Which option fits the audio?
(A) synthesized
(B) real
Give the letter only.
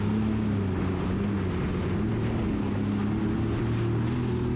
B